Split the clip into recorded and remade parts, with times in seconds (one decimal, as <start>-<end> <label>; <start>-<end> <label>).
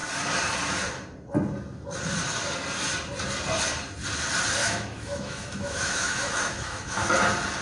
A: 0.0-4.6 recorded; 4.6-7.1 remade; 7.1-7.6 recorded